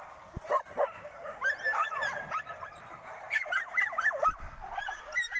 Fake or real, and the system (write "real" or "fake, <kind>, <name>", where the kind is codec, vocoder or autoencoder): real